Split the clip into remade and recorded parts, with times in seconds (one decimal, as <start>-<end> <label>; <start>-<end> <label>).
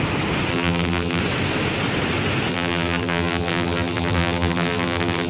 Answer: 0.0-0.5 recorded; 0.5-1.2 remade; 1.2-2.5 recorded; 2.5-5.3 remade